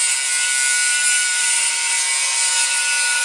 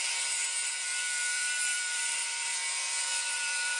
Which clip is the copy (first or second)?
second